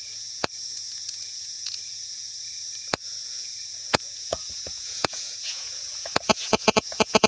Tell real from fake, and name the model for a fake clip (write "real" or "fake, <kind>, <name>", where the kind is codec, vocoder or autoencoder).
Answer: fake, vocoder, Vocos